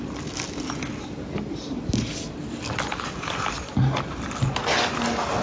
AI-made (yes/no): no